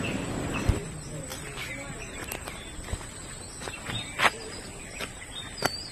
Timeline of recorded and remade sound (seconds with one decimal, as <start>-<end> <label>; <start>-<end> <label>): 0.0-1.3 remade; 1.3-4.8 recorded; 4.8-5.9 remade